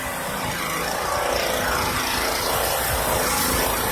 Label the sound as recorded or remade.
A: recorded